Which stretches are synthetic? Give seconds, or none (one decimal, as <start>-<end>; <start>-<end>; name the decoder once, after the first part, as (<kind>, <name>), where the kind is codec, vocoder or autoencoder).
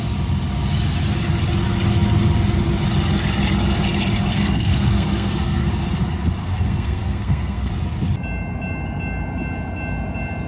4.3-5.7 (codec, SNAC); 6.4-7.7